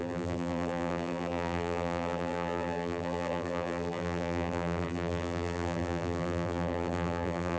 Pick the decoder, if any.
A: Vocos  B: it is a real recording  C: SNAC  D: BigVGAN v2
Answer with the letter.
D